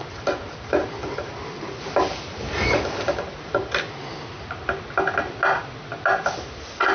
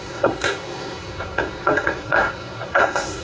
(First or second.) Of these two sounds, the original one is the first